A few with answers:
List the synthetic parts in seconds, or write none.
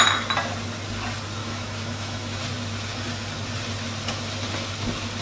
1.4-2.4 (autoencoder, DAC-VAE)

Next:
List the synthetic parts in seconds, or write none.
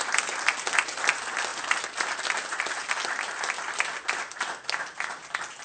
none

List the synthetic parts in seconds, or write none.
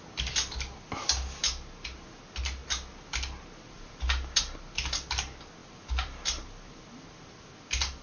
5.6-7.5 (vocoder, BigVGAN v2)